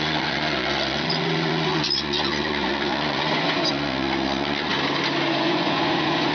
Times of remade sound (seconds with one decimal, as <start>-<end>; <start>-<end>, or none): 0.0-4.7; 5.3-6.3